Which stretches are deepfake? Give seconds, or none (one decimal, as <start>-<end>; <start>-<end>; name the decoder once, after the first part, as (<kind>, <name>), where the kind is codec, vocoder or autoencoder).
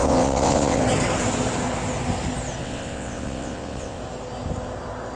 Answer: 0.0-0.8 (vocoder, WaveNeXt); 2.6-4.0